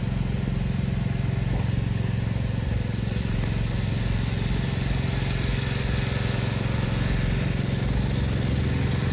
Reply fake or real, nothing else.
real